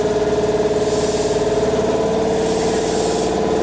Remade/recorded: recorded